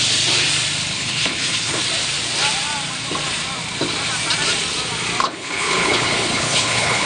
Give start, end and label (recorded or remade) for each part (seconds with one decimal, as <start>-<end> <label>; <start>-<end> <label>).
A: 0.0-0.9 recorded; 0.9-1.8 remade; 1.8-5.2 recorded; 5.2-7.1 remade